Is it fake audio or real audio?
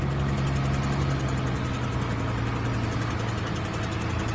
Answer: real